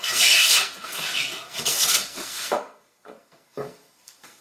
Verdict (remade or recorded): remade